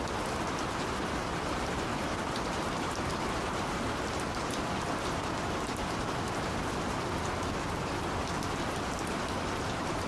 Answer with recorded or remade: remade